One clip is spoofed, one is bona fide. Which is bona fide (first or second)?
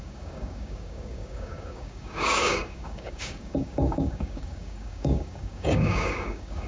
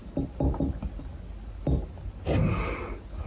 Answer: second